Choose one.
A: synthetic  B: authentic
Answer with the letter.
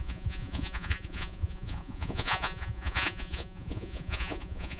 A